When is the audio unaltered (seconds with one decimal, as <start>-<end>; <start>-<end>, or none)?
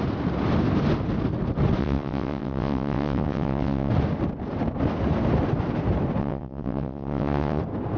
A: 0.0-1.8; 3.9-6.2; 7.6-8.0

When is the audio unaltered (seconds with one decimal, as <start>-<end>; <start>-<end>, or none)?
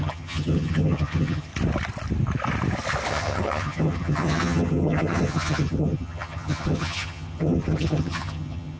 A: 1.5-3.1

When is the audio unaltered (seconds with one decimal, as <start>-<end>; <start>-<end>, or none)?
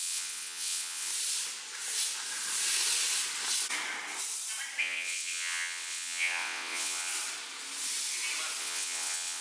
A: 1.1-4.8; 7.1-8.6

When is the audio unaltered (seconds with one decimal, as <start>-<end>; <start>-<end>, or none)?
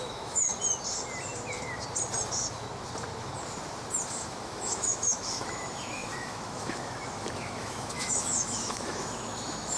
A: 0.5-4.1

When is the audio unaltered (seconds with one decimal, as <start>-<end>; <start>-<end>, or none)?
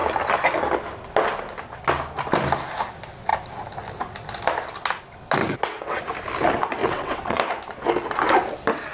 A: 0.0-5.4; 6.0-6.8; 7.4-8.9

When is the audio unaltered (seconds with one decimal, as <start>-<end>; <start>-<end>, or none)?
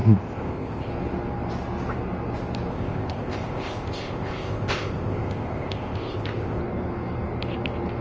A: 0.9-2.7; 6.6-8.0